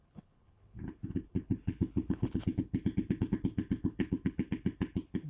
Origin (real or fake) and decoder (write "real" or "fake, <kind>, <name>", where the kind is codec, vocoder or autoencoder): fake, codec, HILCodec